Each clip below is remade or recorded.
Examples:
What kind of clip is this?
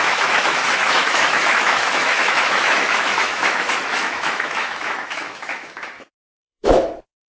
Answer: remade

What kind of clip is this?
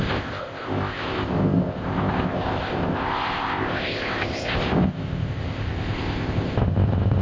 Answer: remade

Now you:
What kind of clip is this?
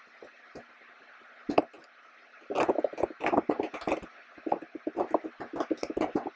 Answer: recorded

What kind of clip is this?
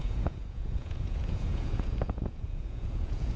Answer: remade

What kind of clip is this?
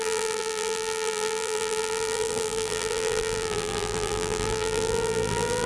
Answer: remade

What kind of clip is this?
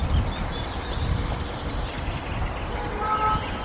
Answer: recorded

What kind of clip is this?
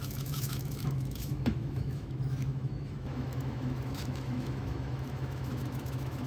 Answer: remade